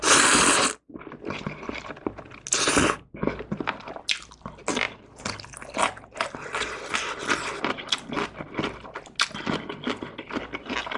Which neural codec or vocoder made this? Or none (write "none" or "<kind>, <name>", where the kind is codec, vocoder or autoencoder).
none